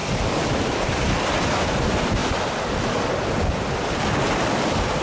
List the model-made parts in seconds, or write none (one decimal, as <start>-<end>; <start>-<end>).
0.0-0.6; 2.2-3.7